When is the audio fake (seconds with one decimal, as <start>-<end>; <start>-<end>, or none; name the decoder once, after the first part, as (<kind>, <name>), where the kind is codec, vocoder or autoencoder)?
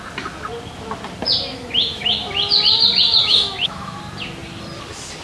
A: 1.5-2.3 (autoencoder, DAC-VAE); 3.2-3.9